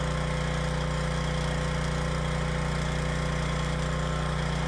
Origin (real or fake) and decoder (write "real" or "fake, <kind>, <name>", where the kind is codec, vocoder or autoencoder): real